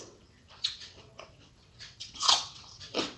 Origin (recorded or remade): remade